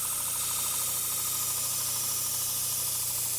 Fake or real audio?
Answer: real